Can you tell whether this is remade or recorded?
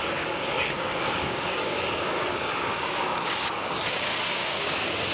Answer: remade